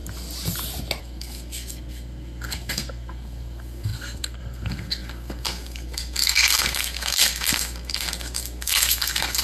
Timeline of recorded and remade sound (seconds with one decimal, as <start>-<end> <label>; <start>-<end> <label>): 0.0-1.0 recorded; 1.0-9.4 remade